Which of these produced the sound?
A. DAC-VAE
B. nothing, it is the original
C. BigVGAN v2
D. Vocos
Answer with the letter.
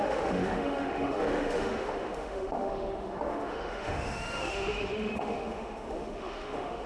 A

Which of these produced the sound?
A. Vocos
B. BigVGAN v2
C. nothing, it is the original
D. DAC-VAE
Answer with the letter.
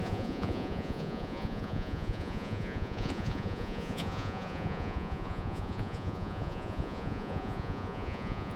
A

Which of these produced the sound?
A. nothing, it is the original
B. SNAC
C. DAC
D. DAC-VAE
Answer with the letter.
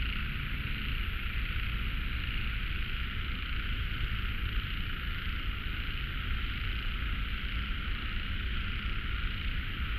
A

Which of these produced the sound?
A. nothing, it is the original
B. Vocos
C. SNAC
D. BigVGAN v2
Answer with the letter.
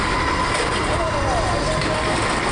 A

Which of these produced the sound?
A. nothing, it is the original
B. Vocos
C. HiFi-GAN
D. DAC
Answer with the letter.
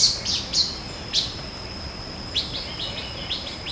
A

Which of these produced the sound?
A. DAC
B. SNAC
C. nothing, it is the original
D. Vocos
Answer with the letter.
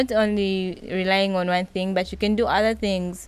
C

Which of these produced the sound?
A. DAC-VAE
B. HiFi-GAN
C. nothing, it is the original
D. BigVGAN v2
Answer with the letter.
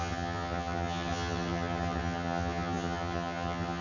B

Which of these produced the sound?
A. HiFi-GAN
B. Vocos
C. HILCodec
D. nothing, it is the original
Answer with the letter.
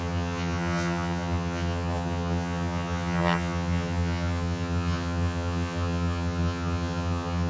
A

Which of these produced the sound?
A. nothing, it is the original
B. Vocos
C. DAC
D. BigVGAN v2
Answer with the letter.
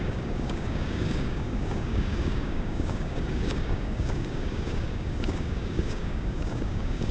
C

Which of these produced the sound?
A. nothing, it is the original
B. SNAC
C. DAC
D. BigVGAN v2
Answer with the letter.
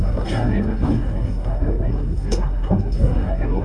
B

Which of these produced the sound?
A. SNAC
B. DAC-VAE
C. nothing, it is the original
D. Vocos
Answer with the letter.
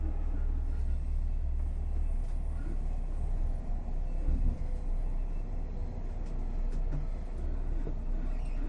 C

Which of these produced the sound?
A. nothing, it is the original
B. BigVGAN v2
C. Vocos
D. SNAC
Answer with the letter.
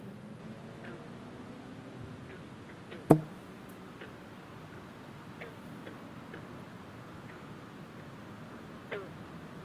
A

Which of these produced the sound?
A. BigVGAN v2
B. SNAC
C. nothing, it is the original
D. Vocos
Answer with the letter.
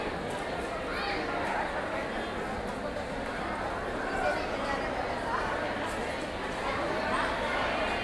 C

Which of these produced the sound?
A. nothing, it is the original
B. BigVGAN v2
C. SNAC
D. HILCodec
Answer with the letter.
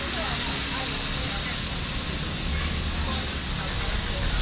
A